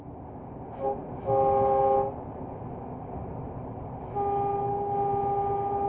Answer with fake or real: real